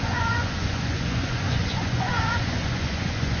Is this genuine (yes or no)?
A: no